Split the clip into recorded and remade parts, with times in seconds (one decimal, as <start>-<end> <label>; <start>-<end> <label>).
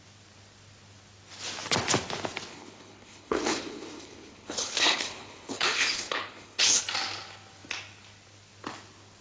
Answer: 0.0-2.5 recorded; 2.5-6.8 remade; 6.8-9.2 recorded